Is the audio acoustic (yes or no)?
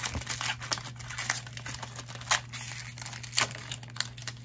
yes